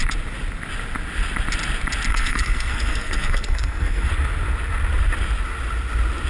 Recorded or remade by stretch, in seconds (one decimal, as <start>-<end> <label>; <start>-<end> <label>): 0.0-2.1 recorded; 2.1-4.1 remade; 4.1-6.3 recorded